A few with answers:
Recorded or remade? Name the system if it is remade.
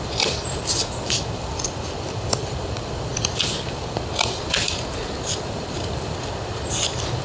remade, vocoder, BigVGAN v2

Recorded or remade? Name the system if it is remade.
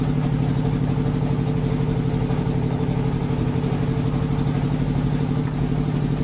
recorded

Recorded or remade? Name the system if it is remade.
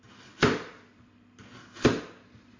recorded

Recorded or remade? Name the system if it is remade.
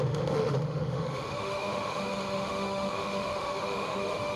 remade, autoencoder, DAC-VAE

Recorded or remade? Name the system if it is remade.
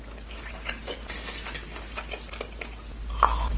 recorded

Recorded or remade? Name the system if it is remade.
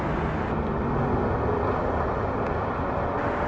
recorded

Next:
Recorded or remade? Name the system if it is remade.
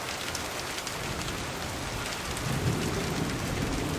recorded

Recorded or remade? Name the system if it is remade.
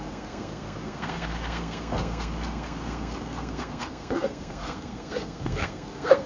remade, codec, SNAC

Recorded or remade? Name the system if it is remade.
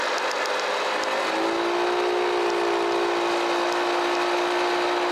recorded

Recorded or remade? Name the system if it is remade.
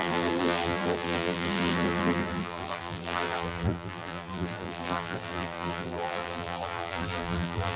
remade, vocoder, BigVGAN v2